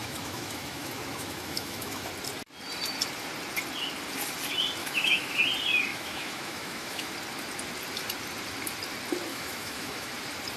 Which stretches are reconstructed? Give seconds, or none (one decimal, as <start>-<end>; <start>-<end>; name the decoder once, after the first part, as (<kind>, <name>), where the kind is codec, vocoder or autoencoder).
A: 0.0-2.1 (autoencoder, DAC-VAE); 4.8-5.4; 5.9-7.1; 9.3-10.1